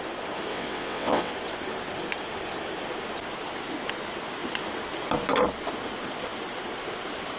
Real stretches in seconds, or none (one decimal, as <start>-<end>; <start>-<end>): 0.0-0.5; 1.3-7.4

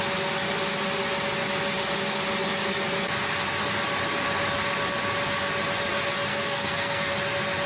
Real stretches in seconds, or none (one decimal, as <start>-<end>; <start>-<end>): 0.0-6.3; 7.1-7.7

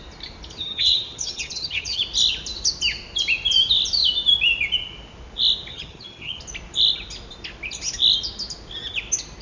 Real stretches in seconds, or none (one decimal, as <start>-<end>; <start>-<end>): 0.0-0.6; 2.0-5.7; 6.4-9.4